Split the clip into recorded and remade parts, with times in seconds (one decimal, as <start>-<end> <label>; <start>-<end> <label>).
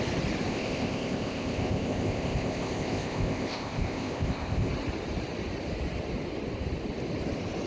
0.0-0.5 recorded; 0.5-4.7 remade; 4.7-7.7 recorded